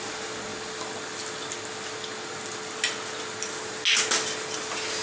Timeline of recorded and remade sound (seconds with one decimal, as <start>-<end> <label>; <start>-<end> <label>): 0.0-5.0 recorded

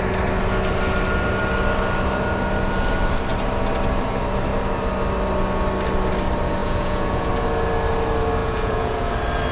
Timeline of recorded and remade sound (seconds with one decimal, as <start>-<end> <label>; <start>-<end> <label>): 0.0-6.6 recorded; 6.6-7.3 remade; 7.3-8.4 recorded; 8.4-9.1 remade; 9.1-9.5 recorded

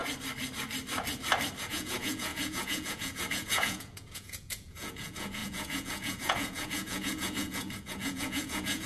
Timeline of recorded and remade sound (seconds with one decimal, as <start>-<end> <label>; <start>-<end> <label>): 0.0-1.6 recorded; 1.6-8.9 remade

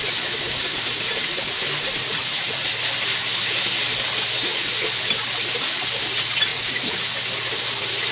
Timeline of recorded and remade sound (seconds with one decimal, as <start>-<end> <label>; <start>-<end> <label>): 0.0-2.0 recorded; 2.0-2.7 remade; 2.7-6.5 recorded; 6.5-7.0 remade; 7.0-8.1 recorded

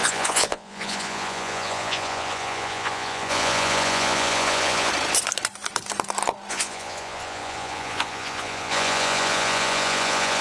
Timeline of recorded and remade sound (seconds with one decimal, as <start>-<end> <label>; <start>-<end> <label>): 0.0-4.9 remade; 4.9-6.5 recorded; 6.5-10.4 remade

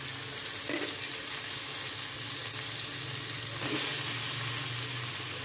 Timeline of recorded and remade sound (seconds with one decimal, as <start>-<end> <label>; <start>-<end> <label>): 0.0-5.4 recorded

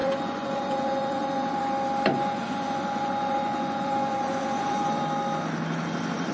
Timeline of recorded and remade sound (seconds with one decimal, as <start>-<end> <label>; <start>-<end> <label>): 0.0-1.6 remade; 1.6-2.1 recorded; 2.1-5.0 remade; 5.0-6.3 recorded